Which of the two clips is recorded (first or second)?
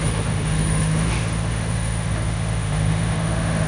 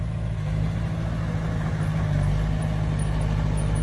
second